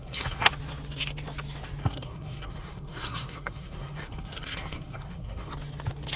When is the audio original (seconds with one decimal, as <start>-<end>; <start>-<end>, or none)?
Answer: 0.5-1.8; 5.5-6.2